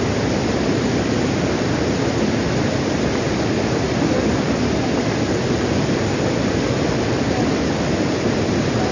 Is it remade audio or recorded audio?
recorded